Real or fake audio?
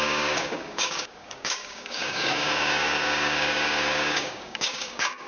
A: fake